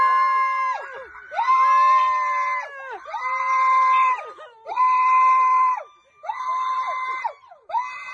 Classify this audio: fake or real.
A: real